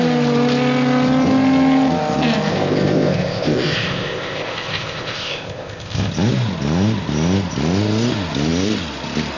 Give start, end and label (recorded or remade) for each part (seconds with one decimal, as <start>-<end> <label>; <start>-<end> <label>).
0.0-2.5 recorded; 2.5-6.1 remade; 6.1-9.4 recorded